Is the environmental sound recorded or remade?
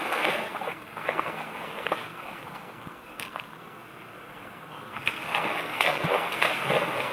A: remade